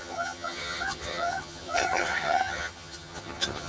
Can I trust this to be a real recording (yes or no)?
no